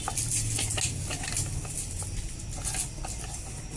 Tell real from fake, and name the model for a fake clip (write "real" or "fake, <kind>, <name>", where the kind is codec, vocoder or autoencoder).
real